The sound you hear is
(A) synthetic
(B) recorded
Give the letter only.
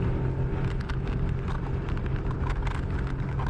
B